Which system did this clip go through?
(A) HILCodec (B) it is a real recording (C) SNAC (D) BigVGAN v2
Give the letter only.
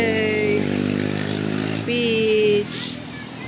B